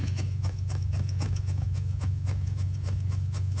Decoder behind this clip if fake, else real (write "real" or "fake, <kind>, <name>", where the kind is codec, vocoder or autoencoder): fake, autoencoder, DAC-VAE